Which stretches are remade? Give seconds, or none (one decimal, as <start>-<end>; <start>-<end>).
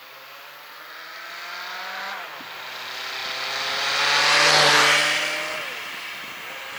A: none